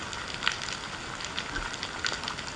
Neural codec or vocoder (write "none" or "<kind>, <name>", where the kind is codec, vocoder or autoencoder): none